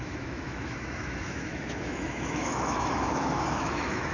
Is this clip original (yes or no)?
no